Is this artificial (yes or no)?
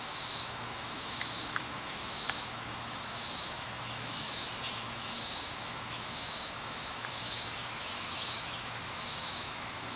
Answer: yes